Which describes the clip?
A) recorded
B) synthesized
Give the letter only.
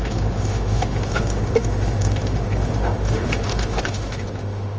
B